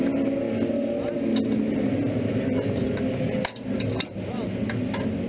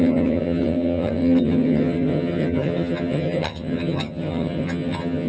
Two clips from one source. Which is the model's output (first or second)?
second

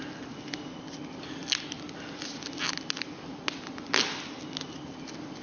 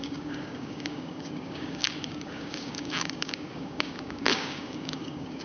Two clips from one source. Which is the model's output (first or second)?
second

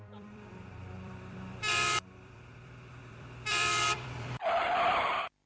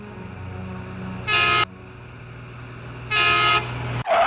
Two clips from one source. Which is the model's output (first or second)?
first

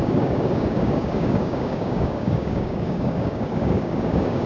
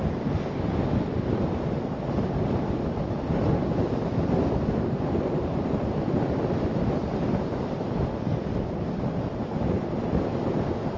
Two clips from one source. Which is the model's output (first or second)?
first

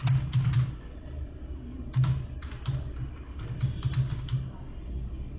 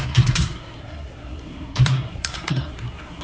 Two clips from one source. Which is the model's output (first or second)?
second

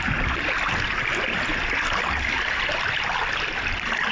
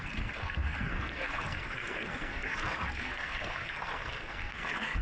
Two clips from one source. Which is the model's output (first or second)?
second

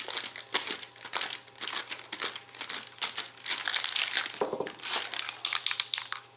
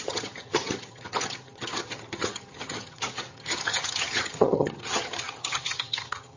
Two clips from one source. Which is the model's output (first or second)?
second